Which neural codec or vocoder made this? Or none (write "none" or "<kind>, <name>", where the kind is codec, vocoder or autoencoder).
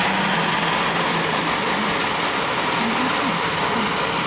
none